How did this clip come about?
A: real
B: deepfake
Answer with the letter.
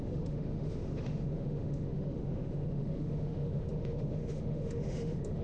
B